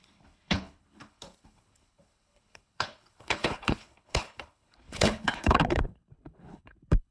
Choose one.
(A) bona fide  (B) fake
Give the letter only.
B